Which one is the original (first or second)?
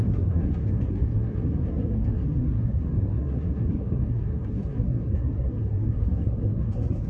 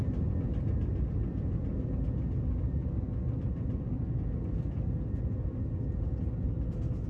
second